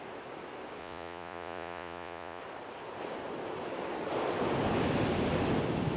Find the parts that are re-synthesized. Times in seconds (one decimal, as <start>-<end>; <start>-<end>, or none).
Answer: 0.8-2.4